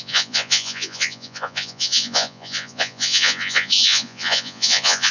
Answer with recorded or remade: remade